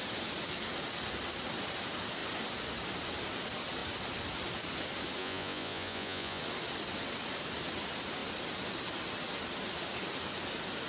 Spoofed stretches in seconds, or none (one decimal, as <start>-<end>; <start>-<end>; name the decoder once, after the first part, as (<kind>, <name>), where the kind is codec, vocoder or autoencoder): 5.2-6.4 (vocoder, Vocos)